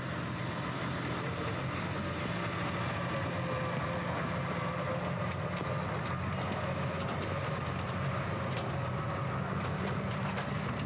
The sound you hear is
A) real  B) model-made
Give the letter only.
A